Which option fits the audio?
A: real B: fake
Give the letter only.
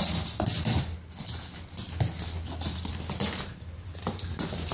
A